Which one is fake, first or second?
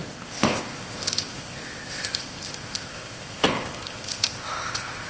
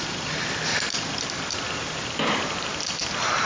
first